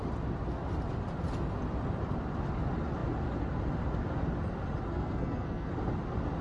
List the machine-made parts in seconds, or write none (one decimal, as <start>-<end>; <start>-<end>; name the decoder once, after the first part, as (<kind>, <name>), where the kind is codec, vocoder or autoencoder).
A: 4.9-5.7 (codec, SNAC)